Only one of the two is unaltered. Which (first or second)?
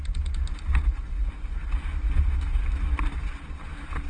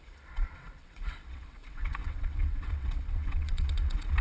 first